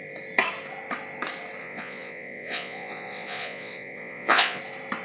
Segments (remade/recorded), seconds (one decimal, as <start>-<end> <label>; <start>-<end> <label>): 0.0-1.6 recorded; 1.6-4.6 remade; 4.6-5.0 recorded